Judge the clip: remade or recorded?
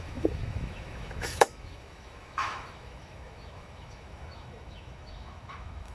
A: remade